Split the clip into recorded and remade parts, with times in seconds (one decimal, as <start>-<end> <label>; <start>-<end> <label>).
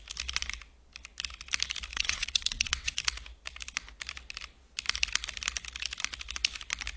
0.0-1.9 recorded; 1.9-3.0 remade; 3.0-7.0 recorded